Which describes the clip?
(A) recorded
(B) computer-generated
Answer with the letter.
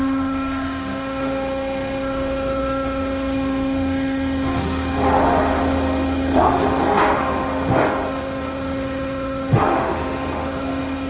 B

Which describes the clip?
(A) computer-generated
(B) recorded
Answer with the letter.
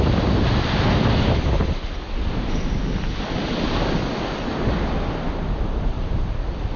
B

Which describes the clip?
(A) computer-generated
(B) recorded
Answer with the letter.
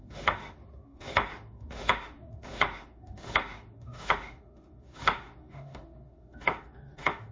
A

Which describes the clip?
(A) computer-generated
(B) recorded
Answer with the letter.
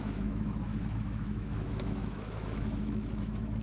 A